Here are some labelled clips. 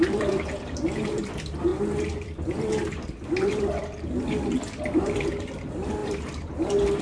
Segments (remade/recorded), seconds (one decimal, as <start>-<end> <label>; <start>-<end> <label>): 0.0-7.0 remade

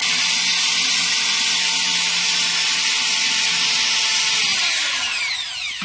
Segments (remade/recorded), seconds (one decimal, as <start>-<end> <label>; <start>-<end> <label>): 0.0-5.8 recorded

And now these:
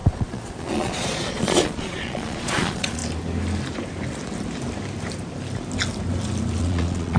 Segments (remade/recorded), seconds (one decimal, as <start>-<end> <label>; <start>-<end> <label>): 0.0-3.0 remade; 3.0-6.6 recorded; 6.6-7.2 remade

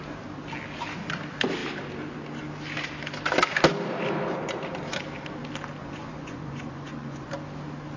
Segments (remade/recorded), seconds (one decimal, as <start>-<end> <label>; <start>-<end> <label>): 0.0-5.8 recorded; 5.8-7.3 remade; 7.3-8.0 recorded